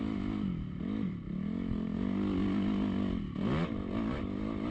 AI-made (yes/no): no